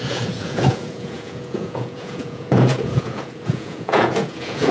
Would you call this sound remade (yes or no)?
yes